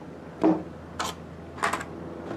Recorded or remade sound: recorded